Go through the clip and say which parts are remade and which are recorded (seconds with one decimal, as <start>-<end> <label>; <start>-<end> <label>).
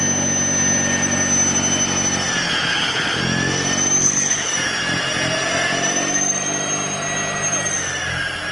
0.0-2.7 recorded; 2.7-3.2 remade; 3.2-4.0 recorded; 4.0-4.5 remade; 4.5-8.5 recorded